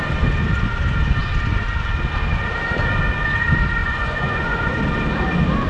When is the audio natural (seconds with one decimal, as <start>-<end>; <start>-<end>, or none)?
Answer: 0.0-3.8; 4.8-5.7